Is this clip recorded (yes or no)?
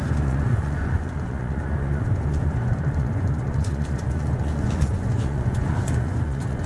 no